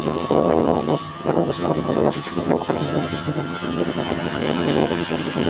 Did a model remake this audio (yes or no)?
yes